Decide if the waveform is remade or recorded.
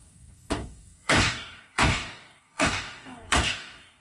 remade